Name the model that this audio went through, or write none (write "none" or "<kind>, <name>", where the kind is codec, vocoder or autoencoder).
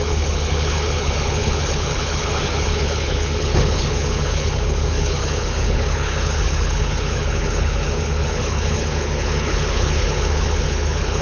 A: codec, HILCodec